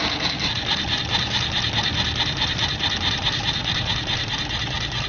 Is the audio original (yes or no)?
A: yes